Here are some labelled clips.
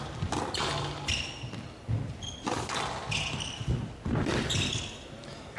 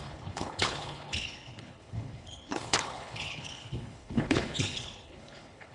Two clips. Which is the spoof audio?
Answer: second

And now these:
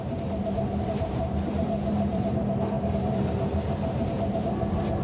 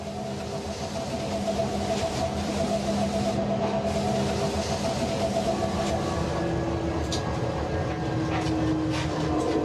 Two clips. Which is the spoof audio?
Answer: first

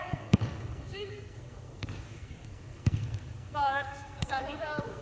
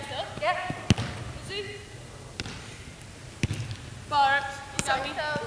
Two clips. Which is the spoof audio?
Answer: first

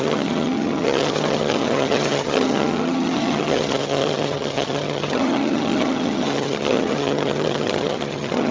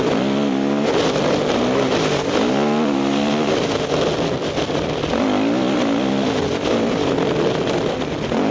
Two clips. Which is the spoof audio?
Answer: first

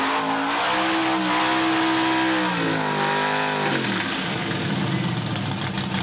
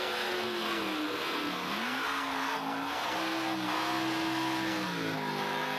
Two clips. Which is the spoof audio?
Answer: second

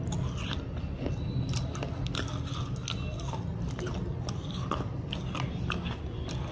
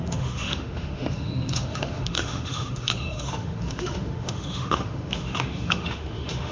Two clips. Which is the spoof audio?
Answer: second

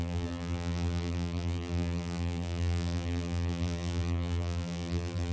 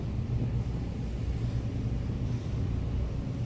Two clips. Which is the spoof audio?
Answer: first